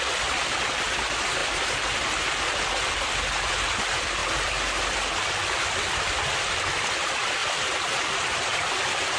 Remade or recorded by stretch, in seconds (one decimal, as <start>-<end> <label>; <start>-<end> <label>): 0.0-9.2 recorded